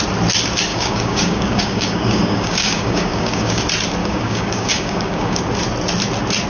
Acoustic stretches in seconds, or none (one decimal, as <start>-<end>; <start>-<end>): 0.0-0.7; 3.6-4.0; 5.4-6.5